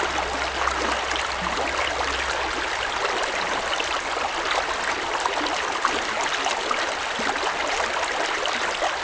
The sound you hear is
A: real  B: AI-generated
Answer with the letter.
A